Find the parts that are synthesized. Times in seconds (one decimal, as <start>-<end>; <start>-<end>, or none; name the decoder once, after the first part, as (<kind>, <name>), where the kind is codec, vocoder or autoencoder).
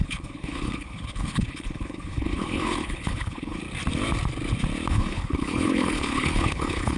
0.0-3.6 (codec, HILCodec); 4.9-7.0